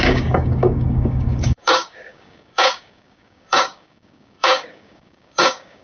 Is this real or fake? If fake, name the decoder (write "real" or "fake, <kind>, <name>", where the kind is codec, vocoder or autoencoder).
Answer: fake, codec, DAC